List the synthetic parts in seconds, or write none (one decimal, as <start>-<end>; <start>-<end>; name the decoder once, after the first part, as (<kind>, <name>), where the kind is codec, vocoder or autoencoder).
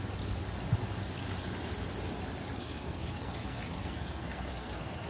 2.6-5.1 (codec, SNAC)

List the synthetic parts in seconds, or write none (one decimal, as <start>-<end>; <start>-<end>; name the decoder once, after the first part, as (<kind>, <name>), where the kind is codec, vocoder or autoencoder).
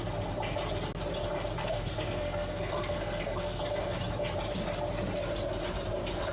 1.6-3.6 (codec, SNAC)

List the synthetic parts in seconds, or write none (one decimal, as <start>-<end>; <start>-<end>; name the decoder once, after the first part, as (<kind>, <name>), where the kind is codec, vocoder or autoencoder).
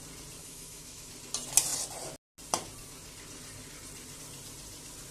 0.4-1.1 (autoencoder, DAC-VAE)